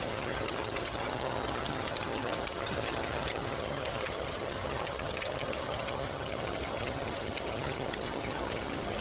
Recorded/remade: remade